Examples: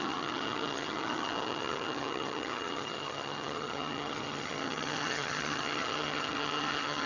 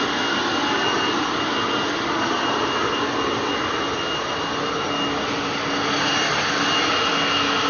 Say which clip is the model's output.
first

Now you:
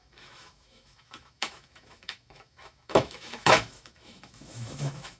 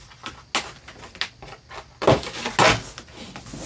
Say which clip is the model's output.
first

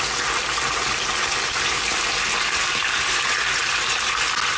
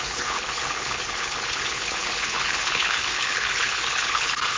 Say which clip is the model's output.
second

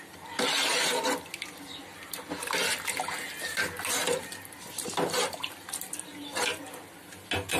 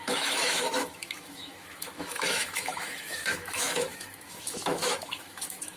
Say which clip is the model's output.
second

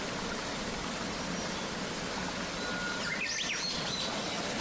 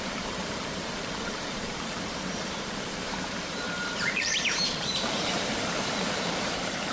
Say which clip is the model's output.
second